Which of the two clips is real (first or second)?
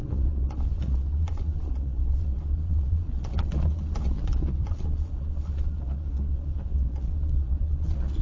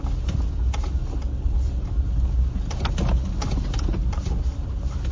second